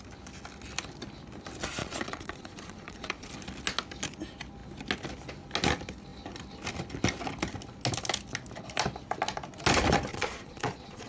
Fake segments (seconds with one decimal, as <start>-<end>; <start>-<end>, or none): 1.8-3.3; 10.1-11.1